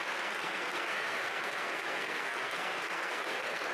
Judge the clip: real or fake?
fake